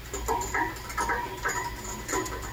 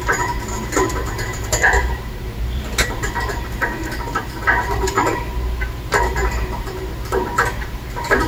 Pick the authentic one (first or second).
first